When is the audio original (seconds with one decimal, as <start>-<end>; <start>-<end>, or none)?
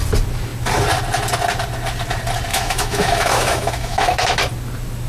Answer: 0.0-2.5; 4.4-5.1